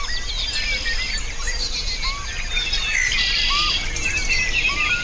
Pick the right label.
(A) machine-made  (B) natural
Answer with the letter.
B